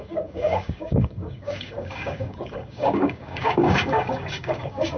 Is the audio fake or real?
fake